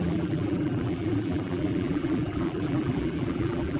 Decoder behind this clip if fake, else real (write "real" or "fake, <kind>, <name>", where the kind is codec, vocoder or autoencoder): fake, vocoder, BigVGAN v2